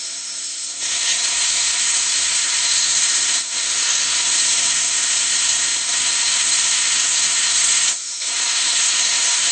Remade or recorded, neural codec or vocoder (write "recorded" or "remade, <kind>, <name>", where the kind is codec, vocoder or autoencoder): remade, codec, SNAC